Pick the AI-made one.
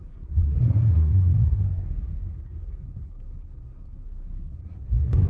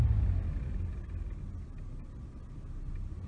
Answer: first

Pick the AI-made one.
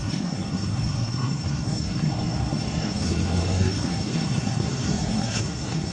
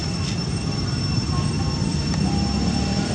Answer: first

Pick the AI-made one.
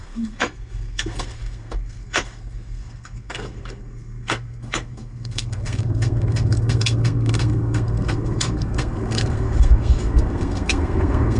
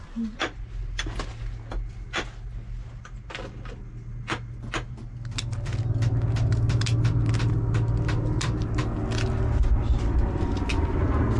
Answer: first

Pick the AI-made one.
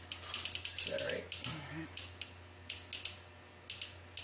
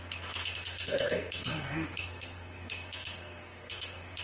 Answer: second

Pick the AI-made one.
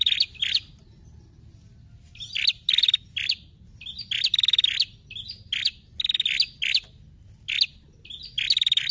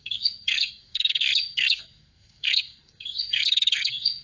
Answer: second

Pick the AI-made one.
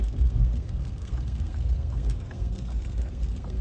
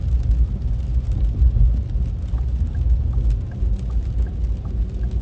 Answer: first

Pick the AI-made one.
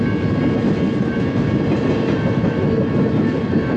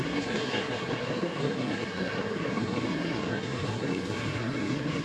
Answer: second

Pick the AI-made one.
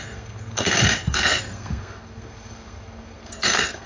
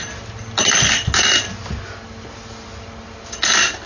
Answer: first